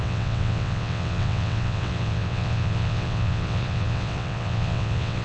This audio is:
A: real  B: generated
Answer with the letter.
B